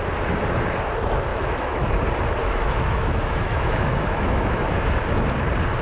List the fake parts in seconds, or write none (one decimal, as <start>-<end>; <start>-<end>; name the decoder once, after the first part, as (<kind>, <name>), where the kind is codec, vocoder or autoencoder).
1.3-1.9 (autoencoder, DAC-VAE); 2.4-4.7